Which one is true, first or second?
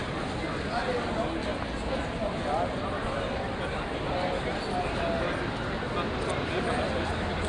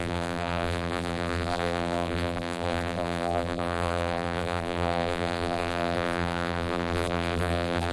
first